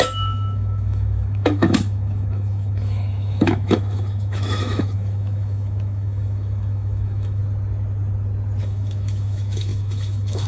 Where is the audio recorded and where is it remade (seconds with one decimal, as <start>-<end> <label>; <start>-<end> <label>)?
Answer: 0.0-7.4 remade; 7.4-8.6 recorded; 8.6-10.5 remade